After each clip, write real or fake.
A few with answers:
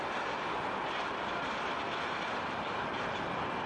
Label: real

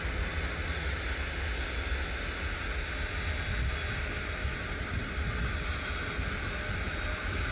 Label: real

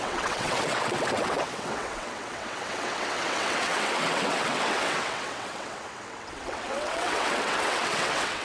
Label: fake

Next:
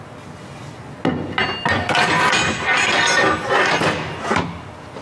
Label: real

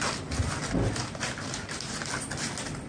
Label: real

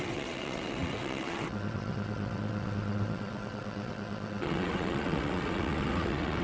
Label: fake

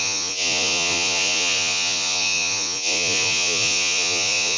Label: fake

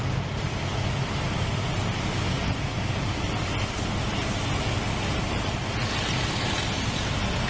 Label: real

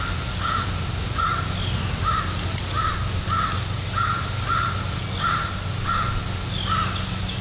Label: real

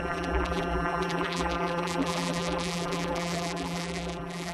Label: fake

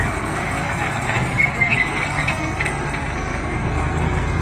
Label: fake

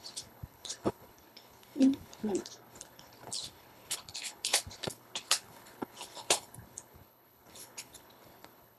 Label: fake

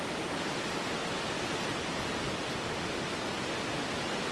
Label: real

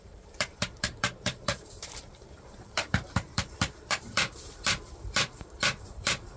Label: fake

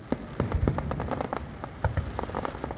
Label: real